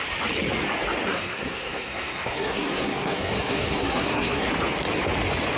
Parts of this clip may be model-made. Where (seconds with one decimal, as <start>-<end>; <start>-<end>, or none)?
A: 1.1-4.5